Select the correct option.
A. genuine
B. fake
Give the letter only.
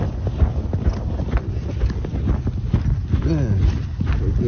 A